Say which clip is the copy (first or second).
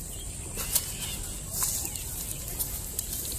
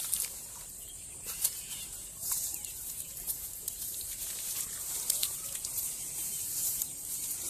second